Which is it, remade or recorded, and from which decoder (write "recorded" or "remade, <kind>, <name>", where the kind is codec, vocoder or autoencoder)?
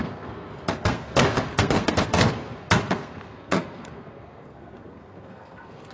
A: remade, codec, SNAC